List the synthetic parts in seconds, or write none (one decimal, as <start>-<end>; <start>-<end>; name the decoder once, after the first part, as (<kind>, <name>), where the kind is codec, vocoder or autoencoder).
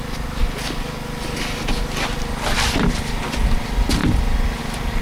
none